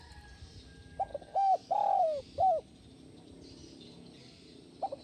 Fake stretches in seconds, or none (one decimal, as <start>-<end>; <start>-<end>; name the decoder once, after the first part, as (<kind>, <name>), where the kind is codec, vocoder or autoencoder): 1.1-2.2 (codec, DAC)